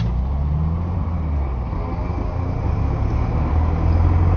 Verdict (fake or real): real